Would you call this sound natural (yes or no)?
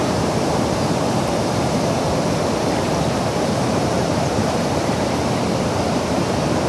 no